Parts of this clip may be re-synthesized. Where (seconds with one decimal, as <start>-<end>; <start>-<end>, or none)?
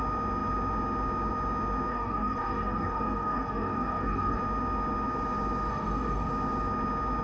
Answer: 1.9-4.4; 5.7-6.3